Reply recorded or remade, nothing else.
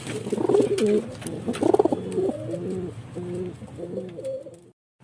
recorded